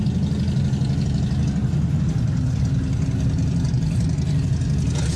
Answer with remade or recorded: recorded